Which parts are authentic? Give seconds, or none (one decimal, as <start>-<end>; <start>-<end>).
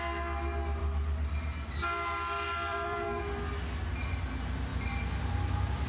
0.0-0.8; 1.7-2.7; 3.2-5.9